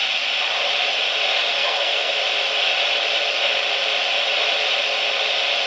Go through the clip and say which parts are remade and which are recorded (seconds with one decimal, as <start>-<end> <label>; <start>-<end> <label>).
0.0-1.5 recorded; 1.5-2.1 remade; 2.1-5.7 recorded